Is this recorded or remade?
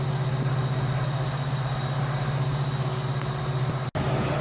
recorded